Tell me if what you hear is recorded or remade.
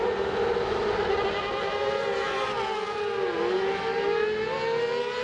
recorded